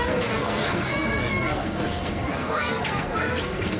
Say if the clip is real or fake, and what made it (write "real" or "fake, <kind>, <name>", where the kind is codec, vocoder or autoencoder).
fake, codec, SNAC